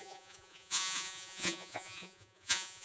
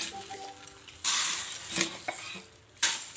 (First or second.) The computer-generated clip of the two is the first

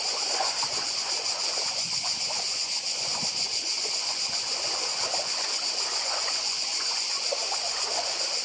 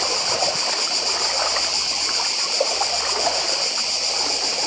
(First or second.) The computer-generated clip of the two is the first